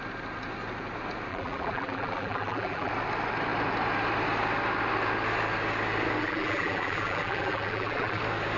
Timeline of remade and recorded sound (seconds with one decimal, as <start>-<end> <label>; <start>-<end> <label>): 0.0-1.3 recorded; 1.3-2.9 remade; 2.9-6.2 recorded; 6.2-8.2 remade; 8.2-8.6 recorded